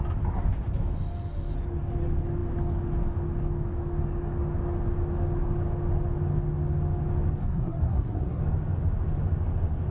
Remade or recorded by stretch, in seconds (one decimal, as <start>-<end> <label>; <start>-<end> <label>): 0.0-7.4 recorded; 7.4-8.4 remade; 8.4-9.9 recorded